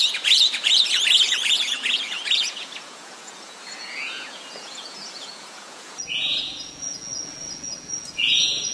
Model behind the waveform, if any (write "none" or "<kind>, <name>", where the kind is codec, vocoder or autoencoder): vocoder, Vocos